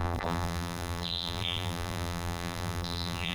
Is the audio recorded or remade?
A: remade